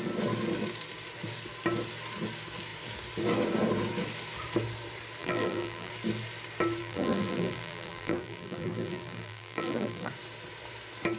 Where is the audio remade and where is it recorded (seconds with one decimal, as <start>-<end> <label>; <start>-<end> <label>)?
0.0-5.2 recorded; 5.2-5.9 remade; 5.9-6.8 recorded; 6.8-10.1 remade; 10.1-11.2 recorded